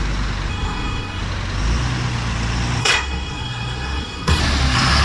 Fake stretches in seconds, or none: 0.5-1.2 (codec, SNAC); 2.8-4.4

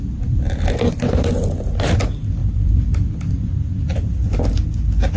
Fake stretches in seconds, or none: 2.4-4.4 (vocoder, BigVGAN v2)